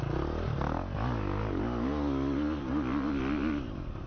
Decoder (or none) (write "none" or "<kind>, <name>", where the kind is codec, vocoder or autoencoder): none